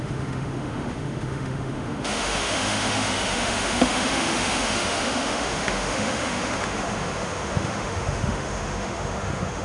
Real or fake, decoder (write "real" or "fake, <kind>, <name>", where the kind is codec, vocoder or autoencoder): fake, autoencoder, DAC-VAE